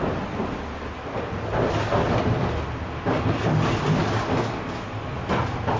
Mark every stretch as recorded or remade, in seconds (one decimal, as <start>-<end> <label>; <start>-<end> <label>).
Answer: 0.0-5.8 recorded